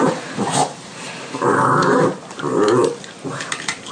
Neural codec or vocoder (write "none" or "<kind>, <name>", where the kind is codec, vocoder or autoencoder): none